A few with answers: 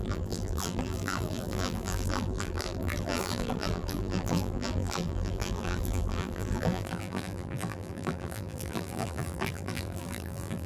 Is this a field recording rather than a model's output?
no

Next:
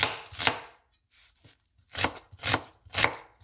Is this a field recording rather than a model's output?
yes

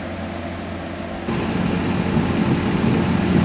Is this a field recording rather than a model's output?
yes